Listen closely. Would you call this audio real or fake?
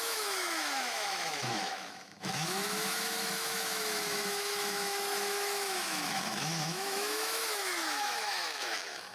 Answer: fake